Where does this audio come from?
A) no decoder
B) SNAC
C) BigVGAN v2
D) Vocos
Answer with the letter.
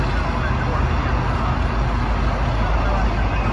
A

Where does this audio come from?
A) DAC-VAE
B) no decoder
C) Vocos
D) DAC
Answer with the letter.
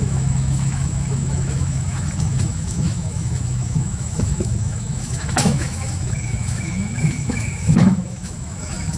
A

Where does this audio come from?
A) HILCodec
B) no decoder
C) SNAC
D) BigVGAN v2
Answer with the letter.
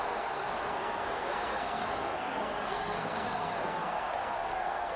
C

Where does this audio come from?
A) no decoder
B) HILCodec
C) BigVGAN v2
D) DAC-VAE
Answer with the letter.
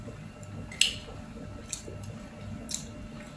A